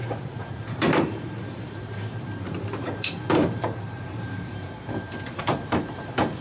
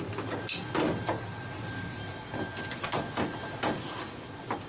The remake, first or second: first